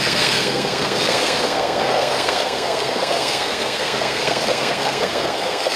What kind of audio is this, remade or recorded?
remade